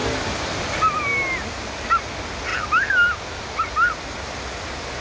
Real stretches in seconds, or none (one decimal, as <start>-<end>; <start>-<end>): 0.6-2.5; 3.4-5.0